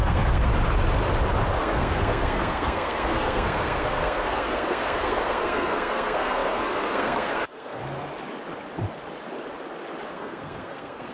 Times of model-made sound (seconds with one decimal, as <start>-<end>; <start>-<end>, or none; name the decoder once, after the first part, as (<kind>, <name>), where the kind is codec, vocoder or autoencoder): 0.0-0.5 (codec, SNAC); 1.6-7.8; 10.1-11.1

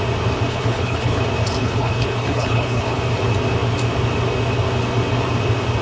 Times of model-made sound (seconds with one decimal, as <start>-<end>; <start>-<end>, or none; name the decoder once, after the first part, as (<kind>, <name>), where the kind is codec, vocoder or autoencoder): 0.5-1.2 (codec, HILCodec); 1.6-3.0

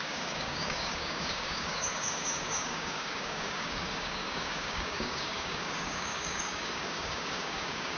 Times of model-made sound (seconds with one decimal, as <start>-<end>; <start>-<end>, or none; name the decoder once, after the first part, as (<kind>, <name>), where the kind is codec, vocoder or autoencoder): 0.0-8.0 (codec, DAC)

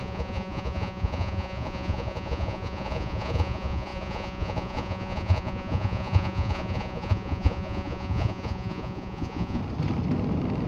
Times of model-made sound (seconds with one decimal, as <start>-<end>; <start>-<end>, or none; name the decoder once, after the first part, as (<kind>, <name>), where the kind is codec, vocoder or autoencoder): 0.0-9.6 (vocoder, Vocos)

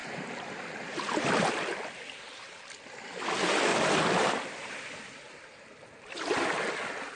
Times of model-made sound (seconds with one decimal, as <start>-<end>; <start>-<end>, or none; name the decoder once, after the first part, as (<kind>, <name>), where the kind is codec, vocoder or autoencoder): 0.0-1.5 (vocoder, BigVGAN v2); 3.7-6.8